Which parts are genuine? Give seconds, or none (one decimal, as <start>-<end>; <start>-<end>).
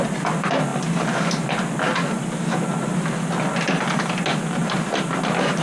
0.0-5.6